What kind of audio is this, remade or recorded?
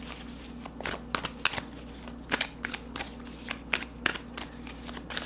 recorded